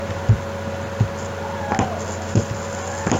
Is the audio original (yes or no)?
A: yes